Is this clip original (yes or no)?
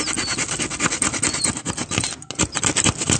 yes